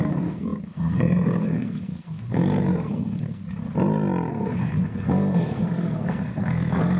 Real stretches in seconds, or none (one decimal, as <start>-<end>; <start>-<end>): 3.4-4.3